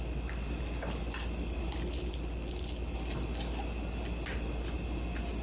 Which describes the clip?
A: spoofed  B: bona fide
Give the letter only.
B